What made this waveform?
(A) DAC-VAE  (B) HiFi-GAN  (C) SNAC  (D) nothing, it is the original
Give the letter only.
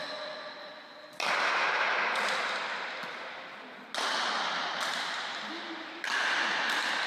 D